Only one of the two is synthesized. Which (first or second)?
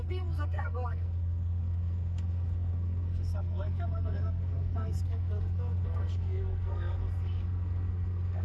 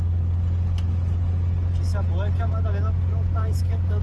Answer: first